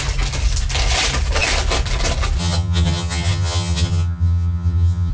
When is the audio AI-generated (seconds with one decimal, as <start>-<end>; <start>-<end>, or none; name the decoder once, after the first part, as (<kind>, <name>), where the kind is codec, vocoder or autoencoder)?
2.4-5.1 (vocoder, HiFi-GAN)